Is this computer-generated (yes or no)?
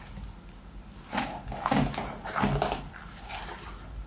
no